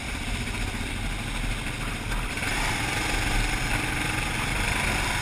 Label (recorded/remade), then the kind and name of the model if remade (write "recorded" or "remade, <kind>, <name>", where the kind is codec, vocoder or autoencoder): recorded